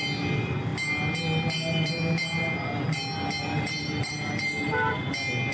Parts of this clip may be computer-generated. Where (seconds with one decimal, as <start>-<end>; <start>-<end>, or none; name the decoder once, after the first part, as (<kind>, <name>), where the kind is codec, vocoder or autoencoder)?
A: 3.4-4.9 (vocoder, BigVGAN v2)